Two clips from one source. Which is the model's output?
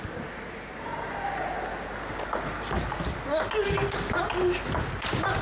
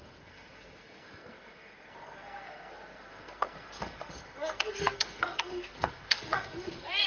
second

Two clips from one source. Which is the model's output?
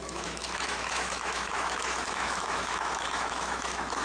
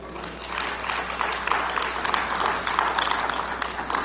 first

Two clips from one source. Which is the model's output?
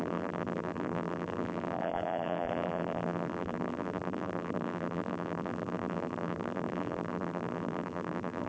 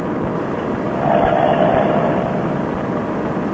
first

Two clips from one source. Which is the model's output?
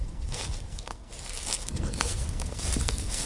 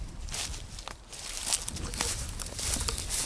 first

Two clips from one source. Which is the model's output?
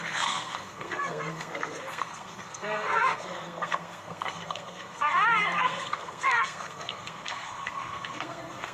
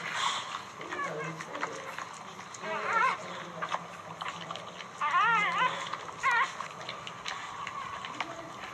first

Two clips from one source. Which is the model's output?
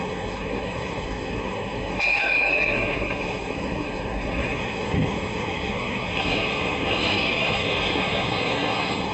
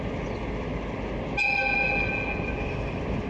first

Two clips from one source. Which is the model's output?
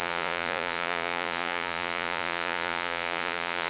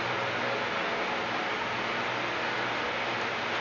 first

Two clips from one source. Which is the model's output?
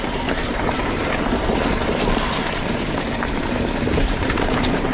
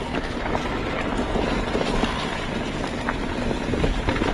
first